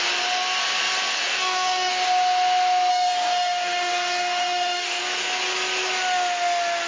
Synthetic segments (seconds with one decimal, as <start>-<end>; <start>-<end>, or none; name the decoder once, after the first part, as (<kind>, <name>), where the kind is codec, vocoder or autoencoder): 1.3-1.9 (codec, DAC); 2.9-5.0